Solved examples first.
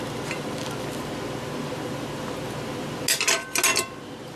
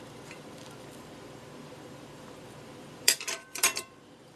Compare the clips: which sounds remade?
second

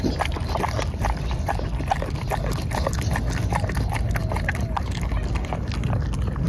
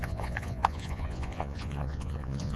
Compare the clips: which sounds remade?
second